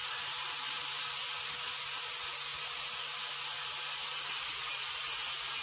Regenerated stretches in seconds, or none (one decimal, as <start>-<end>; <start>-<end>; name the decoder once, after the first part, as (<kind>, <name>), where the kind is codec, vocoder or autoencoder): 0.0-0.8 (vocoder, BigVGAN v2); 2.5-3.3